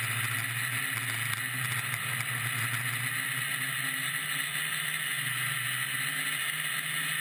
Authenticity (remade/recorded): recorded